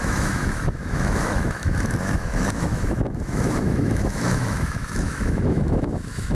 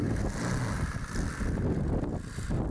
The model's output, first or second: first